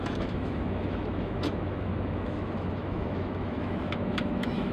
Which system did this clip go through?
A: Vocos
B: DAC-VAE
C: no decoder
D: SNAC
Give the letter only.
B